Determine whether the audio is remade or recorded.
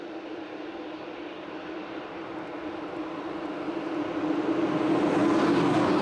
recorded